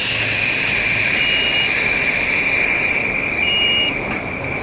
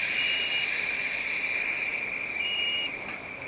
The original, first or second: first